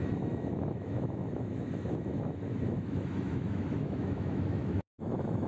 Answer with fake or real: fake